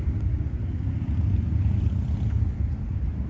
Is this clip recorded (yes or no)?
no